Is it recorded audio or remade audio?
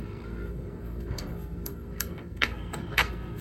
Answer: remade